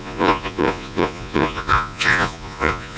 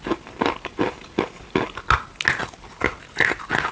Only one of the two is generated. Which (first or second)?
first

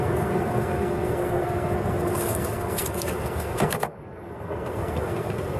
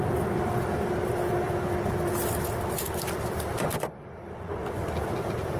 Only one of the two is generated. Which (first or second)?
first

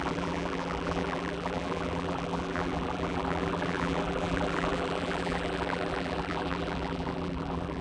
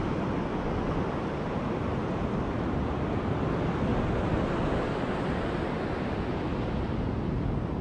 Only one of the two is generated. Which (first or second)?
first